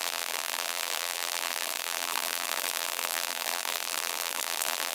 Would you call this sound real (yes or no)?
no